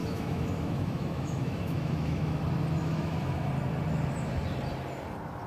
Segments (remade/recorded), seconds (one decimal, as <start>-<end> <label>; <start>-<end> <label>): 0.0-2.4 remade; 2.4-2.8 recorded; 2.8-3.5 remade; 3.5-5.5 recorded